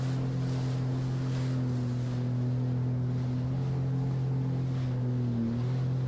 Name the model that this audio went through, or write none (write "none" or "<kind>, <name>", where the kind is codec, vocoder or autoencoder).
none